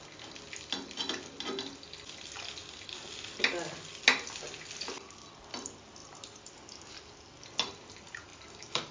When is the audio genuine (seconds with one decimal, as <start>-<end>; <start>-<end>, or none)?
0.0-8.3